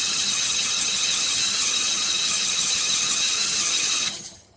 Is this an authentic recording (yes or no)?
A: no